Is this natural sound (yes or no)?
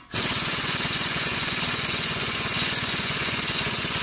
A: no